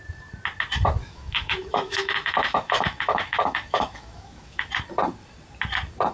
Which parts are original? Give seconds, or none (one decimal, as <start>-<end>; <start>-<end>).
0.0-1.0; 4.7-6.1